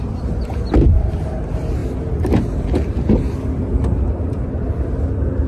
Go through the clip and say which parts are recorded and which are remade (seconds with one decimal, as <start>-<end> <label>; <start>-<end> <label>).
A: 0.0-5.5 recorded